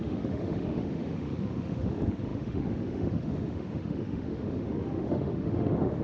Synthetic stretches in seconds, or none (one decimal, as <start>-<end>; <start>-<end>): 0.0-6.0